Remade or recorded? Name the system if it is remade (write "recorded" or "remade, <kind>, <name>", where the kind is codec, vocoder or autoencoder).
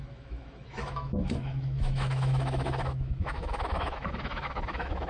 remade, autoencoder, DAC-VAE